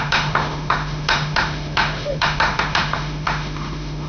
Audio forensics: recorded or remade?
remade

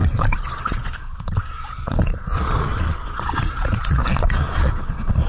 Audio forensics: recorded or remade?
remade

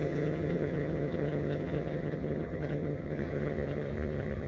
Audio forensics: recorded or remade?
remade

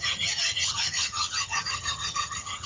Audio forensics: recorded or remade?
remade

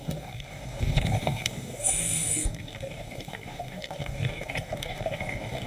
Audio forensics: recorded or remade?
remade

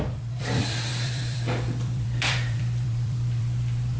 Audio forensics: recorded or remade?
remade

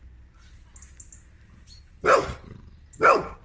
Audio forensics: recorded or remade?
recorded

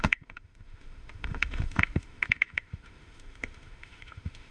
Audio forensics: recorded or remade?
remade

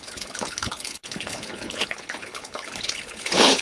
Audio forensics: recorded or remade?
remade